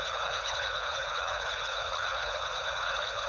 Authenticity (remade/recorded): remade